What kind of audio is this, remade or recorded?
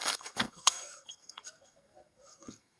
remade